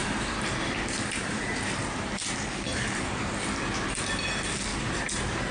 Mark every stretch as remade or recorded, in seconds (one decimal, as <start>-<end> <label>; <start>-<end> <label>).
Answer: 0.0-3.3 remade; 3.3-4.7 recorded; 4.7-5.5 remade